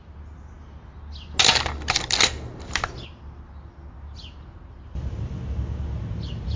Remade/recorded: recorded